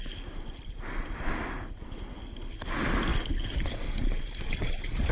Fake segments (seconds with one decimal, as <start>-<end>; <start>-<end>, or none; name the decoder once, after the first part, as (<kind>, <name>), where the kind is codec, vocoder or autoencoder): none